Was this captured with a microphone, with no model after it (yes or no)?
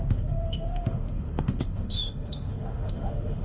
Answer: no